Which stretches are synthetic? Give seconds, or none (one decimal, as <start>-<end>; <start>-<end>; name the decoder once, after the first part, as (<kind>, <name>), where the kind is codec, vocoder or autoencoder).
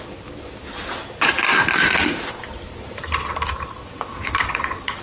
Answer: 3.8-5.0 (vocoder, WaveNeXt)